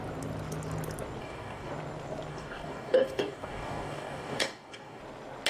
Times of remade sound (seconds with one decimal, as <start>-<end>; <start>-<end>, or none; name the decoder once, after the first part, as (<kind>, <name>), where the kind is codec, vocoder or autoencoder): 1.2-1.7 (codec, DAC); 2.3-5.0